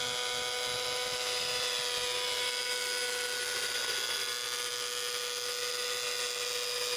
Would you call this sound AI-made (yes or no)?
no